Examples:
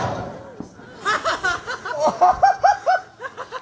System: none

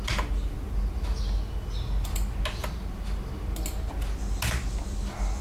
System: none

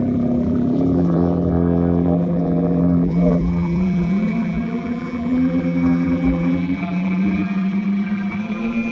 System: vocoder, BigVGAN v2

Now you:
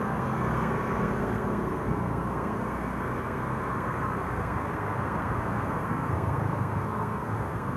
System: codec, SNAC